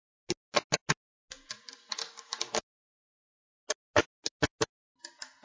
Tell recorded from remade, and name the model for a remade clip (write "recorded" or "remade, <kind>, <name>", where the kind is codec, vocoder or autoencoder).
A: recorded